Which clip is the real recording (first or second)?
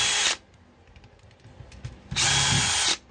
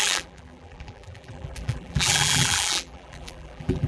first